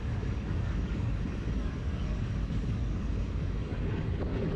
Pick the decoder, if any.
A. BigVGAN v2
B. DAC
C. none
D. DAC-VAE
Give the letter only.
B